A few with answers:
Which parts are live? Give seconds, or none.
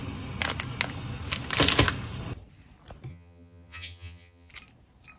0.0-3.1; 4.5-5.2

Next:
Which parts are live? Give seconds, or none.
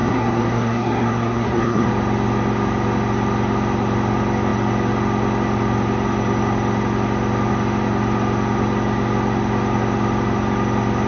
1.9-11.1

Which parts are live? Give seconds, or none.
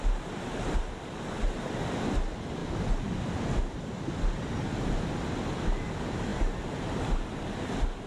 0.0-8.1